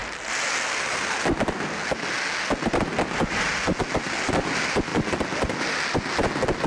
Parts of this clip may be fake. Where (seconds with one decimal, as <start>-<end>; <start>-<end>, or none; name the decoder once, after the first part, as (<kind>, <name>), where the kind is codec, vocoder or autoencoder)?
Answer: none